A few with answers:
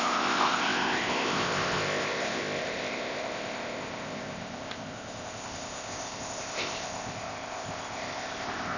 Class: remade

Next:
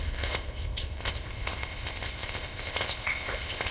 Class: remade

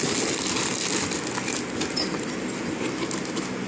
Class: recorded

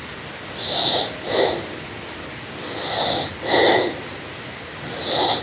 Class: recorded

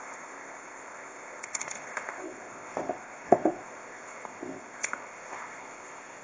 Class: remade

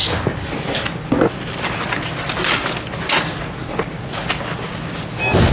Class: recorded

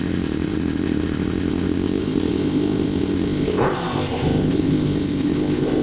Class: remade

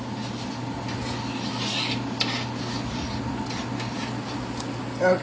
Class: recorded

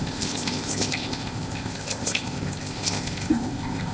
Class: remade